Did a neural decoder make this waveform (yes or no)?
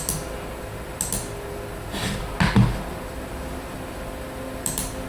no